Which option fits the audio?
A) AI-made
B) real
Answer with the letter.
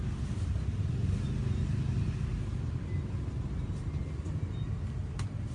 B